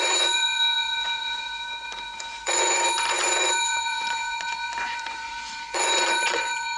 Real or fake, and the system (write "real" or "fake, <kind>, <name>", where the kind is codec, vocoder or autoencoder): fake, vocoder, Vocos